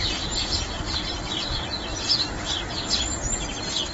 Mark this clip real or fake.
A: real